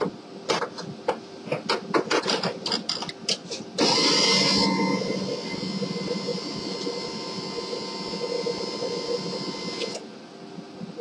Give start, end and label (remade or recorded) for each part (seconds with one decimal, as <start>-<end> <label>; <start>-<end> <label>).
0.0-11.0 recorded